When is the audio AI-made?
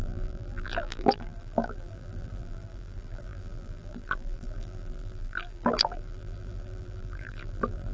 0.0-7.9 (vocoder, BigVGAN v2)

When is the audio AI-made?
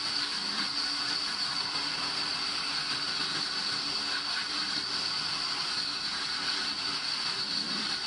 0.0-0.4 (vocoder, BigVGAN v2); 1.5-2.3; 6.5-8.1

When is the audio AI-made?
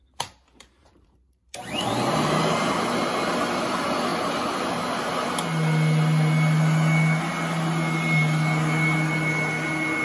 0.0-2.4 (vocoder, BigVGAN v2)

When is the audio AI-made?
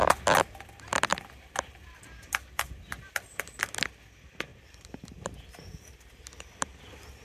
4.5-6.2 (vocoder, BigVGAN v2)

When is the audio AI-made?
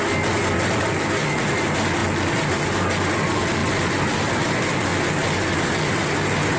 none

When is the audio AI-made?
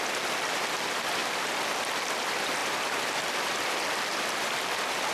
none